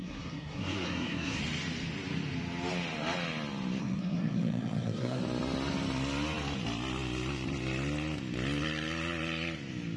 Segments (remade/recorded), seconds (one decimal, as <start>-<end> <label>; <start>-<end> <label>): 0.0-1.4 remade; 1.4-3.8 recorded; 3.8-5.2 remade; 5.2-10.0 recorded